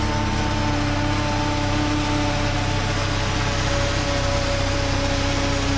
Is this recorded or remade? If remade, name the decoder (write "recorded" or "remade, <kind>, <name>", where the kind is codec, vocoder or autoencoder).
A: recorded